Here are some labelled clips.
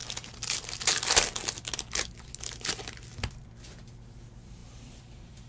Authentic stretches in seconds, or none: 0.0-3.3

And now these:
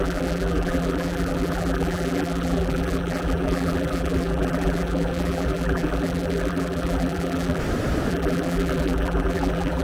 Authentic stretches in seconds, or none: 7.6-8.1

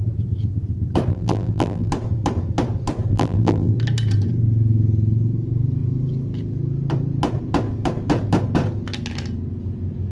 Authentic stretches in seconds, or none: 0.0-1.1; 1.9-3.1; 3.7-10.1

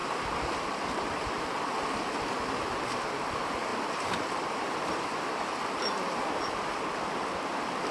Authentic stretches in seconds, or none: 1.4-3.7; 4.6-7.9

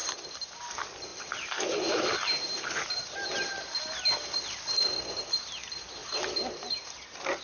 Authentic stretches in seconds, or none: 0.0-7.4

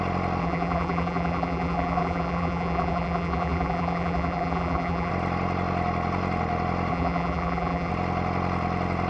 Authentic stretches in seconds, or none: 0.0-0.4; 5.1-6.9; 7.9-9.1

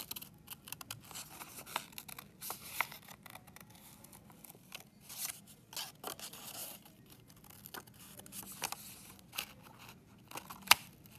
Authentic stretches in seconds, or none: 0.0-6.6; 7.3-11.2

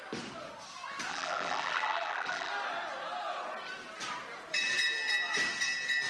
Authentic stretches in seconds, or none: 0.0-1.1; 2.5-6.1